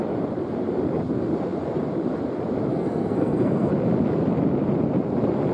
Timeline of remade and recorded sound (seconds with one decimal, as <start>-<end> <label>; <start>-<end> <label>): 0.0-2.7 recorded; 2.7-3.7 remade; 3.7-5.5 recorded